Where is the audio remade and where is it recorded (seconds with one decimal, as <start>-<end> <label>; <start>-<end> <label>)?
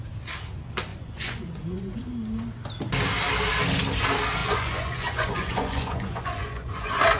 0.0-0.9 recorded; 0.9-2.0 remade; 2.0-4.4 recorded; 4.4-7.2 remade